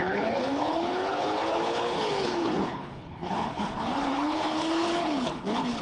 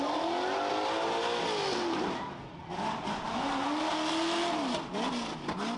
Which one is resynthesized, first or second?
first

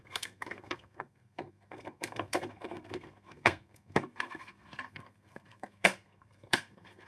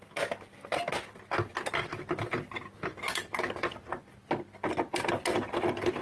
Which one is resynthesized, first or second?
first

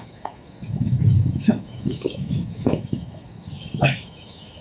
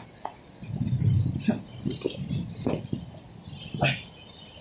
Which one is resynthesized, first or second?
first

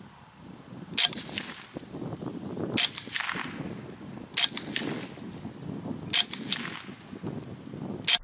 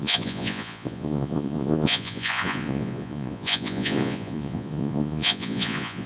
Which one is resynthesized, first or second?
second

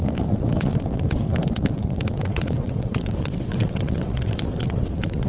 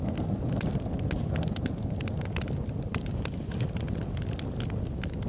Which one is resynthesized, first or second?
first